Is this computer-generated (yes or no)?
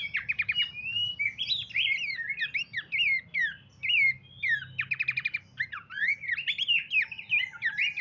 no